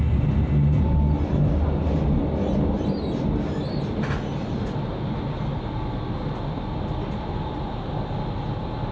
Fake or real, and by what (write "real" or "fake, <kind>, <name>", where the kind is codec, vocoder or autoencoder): real